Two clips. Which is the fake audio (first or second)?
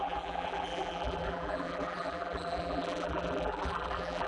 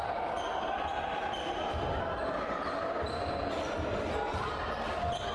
first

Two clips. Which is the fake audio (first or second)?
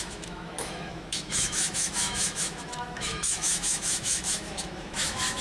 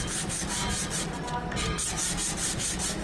first